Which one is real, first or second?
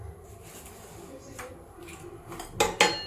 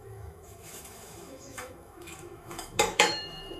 first